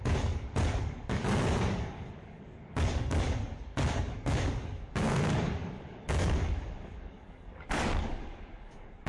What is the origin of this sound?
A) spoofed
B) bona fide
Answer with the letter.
A